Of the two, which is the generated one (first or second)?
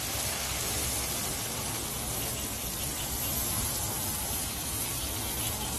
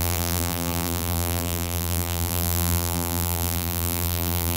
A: second